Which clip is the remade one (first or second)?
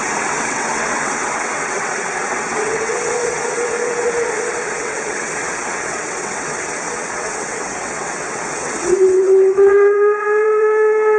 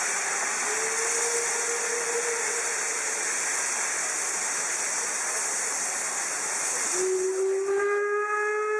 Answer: first